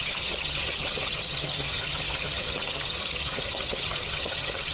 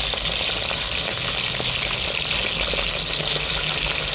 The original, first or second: second